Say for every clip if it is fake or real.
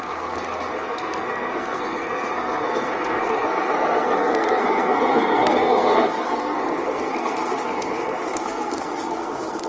fake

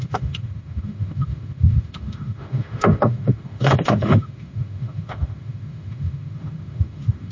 fake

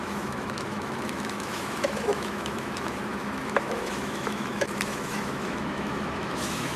fake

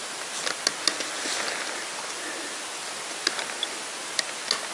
real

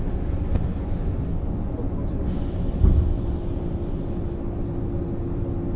real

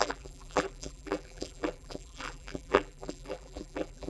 fake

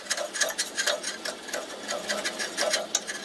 real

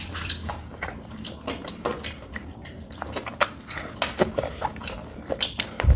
real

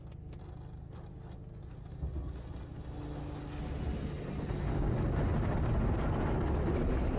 real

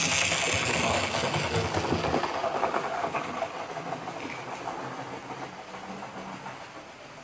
real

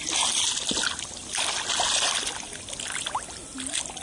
real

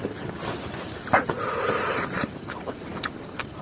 fake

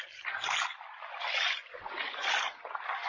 real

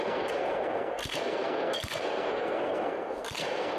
fake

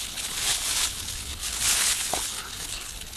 fake